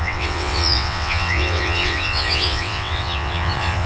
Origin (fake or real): fake